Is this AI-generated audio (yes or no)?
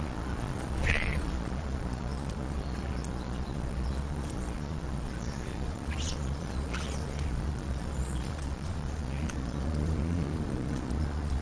yes